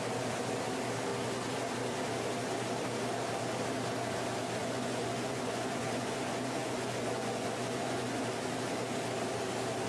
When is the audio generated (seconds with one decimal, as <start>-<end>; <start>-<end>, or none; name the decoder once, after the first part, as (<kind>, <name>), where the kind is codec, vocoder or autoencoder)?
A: 4.6-8.2 (vocoder, Vocos)